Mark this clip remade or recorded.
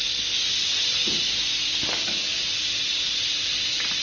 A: recorded